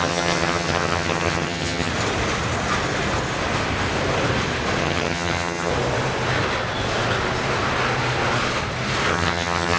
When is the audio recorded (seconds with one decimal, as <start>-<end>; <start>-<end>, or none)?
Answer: 1.9-4.8; 5.7-9.1